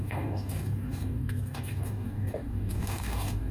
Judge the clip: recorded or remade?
remade